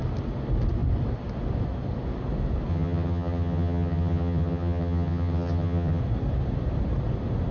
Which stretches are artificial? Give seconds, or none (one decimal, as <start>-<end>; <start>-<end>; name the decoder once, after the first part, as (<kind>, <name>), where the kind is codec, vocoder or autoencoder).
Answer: 2.7-6.0 (vocoder, HiFi-GAN)

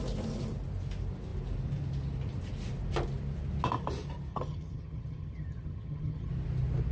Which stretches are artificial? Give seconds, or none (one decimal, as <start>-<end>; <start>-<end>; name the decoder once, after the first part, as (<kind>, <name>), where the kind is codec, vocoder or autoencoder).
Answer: 4.3-6.3 (vocoder, HiFi-GAN)

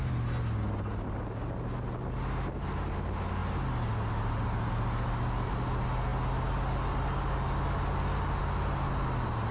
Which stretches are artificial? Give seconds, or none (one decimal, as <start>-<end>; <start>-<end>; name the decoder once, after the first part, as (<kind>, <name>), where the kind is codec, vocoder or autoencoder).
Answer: none

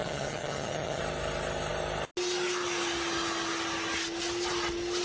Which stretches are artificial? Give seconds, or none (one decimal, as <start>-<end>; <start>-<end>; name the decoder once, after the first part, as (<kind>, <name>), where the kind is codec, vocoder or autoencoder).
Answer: 0.0-1.0 (vocoder, HiFi-GAN)

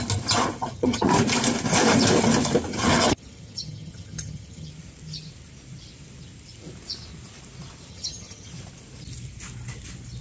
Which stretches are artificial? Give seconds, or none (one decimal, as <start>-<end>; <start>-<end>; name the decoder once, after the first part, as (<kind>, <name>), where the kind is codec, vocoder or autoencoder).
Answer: 0.6-1.1 (vocoder, HiFi-GAN); 2.7-4.7; 7.9-8.5